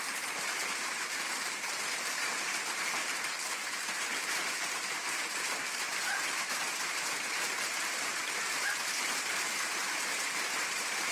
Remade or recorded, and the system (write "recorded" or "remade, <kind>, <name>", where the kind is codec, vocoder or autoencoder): remade, vocoder, BigVGAN v2